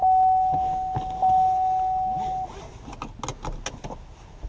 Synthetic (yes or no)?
no